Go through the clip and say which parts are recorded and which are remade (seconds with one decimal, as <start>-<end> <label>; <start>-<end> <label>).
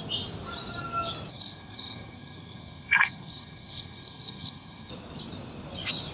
0.0-1.3 recorded; 1.3-4.9 remade; 4.9-6.1 recorded